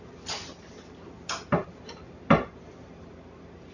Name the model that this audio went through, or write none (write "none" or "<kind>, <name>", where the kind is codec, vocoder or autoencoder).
none